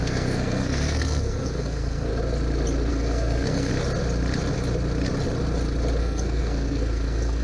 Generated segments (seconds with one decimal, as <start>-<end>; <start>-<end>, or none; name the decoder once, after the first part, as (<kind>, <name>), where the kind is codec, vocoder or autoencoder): 0.0-2.1 (codec, SNAC); 2.9-3.7; 6.0-7.4